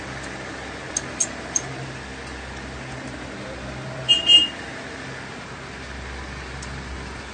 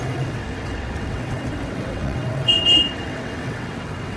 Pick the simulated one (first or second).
second